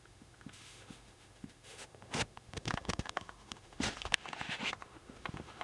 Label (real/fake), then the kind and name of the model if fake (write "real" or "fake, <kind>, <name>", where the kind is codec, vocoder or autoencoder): fake, autoencoder, DAC-VAE